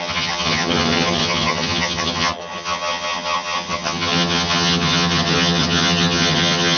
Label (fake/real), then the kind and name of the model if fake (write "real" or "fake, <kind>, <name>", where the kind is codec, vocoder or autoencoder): fake, vocoder, HiFi-GAN